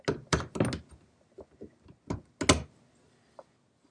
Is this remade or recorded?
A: recorded